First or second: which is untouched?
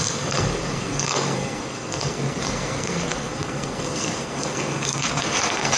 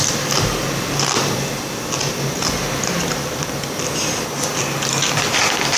second